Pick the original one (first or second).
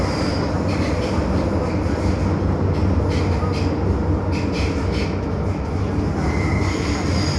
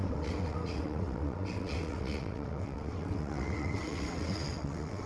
first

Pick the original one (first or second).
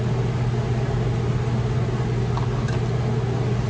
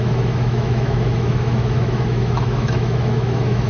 first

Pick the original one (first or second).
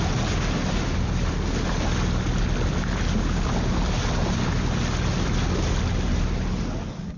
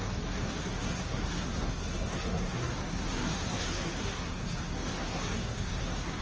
first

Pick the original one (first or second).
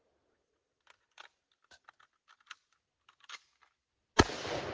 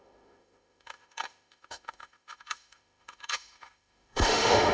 first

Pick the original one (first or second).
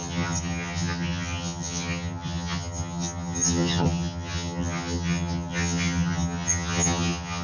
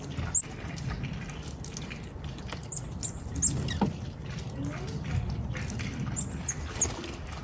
second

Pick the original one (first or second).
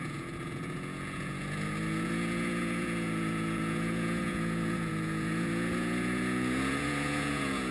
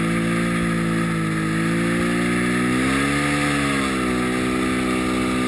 second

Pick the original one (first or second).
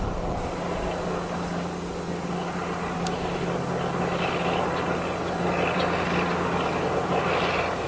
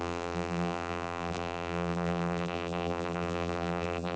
first